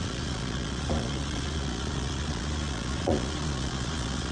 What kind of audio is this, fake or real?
fake